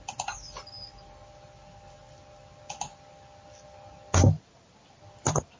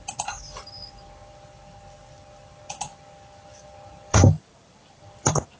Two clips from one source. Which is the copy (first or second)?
second